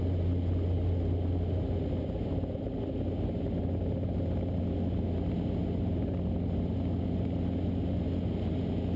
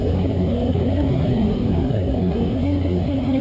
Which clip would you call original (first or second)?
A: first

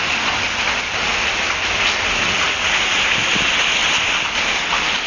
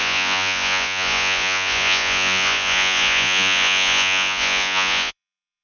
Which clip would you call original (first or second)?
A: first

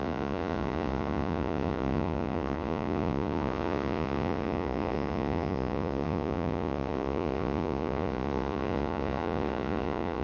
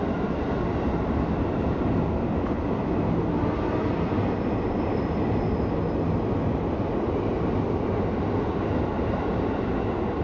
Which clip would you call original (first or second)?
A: second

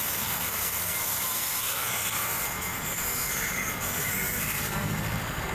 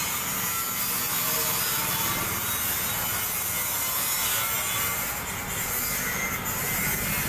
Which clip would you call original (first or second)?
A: second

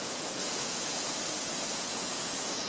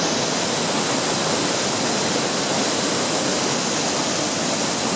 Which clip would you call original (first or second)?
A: second